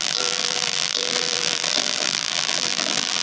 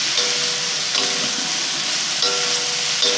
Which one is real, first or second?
second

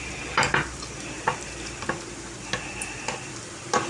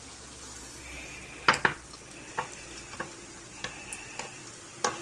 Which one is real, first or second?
second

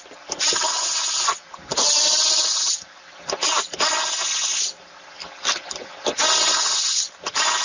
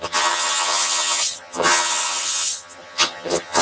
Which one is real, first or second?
first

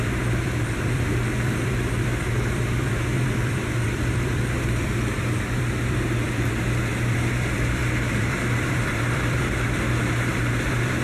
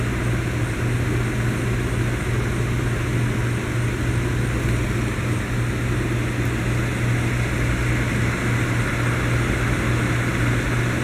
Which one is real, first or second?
second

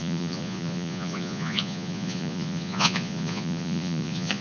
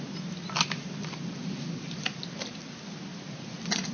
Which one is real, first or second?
second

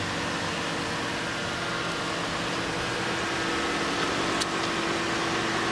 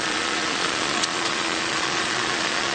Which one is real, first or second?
first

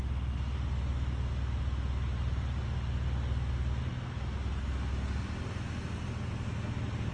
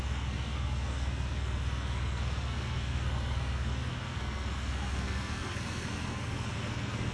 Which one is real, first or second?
first